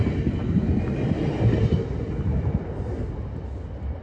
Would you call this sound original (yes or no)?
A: yes